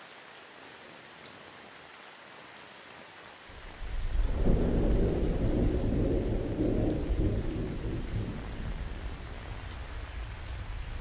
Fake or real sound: real